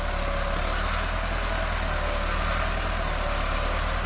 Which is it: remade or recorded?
recorded